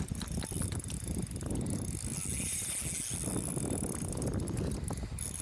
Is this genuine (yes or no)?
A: yes